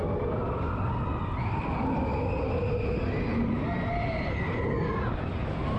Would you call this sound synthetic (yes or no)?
no